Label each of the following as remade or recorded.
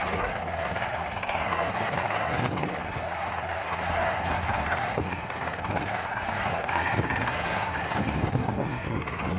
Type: remade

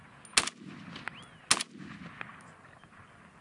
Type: recorded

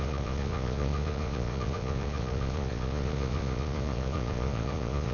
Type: remade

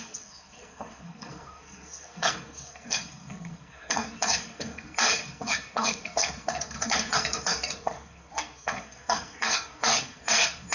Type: remade